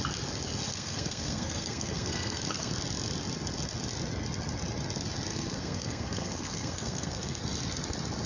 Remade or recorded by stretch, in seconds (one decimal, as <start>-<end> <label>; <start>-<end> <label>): 0.0-0.7 recorded; 0.7-2.7 remade; 2.7-5.3 recorded; 5.3-7.4 remade; 7.4-8.3 recorded